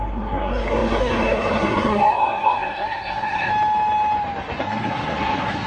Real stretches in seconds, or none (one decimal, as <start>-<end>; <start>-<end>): 3.5-4.6